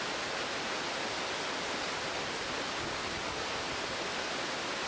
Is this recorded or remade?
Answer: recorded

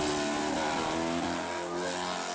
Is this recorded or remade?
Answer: recorded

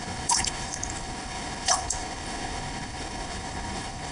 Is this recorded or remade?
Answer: remade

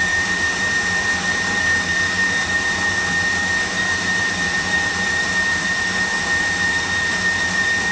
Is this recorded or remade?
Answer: remade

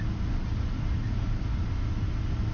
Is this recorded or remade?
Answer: recorded